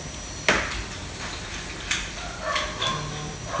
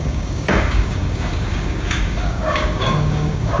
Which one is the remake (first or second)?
second